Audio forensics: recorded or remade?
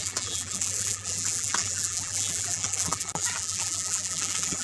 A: remade